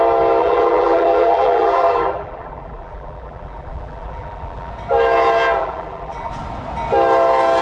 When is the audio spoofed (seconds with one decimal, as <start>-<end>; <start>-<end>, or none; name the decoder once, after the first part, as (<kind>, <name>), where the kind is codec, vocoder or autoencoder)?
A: 0.4-4.7 (vocoder, BigVGAN v2); 5.6-6.3